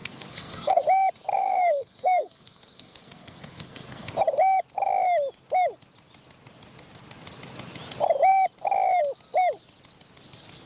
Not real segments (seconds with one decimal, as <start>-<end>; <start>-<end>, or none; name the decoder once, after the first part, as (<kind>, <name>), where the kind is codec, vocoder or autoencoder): 0.0-0.8 (codec, SNAC); 1.4-4.1